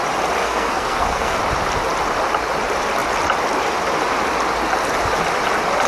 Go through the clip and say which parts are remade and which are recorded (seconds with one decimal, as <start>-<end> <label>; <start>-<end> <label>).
0.0-0.4 recorded; 0.4-1.4 remade; 1.4-5.9 recorded